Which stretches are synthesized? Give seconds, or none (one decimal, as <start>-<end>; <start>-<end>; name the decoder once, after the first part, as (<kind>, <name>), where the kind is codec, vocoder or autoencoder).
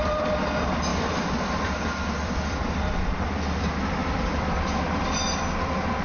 0.9-3.3 (vocoder, BigVGAN v2); 4.0-5.0